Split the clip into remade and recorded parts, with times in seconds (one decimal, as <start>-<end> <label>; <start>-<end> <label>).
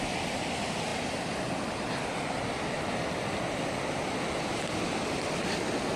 0.0-6.0 recorded